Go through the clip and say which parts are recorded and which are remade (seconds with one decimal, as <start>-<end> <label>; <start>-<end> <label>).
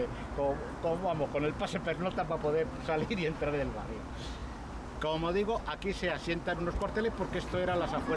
0.0-8.2 recorded